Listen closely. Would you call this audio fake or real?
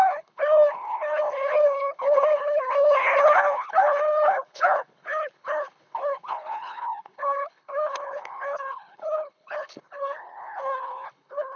fake